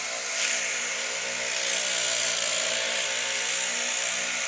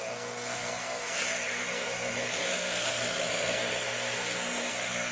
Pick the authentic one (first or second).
first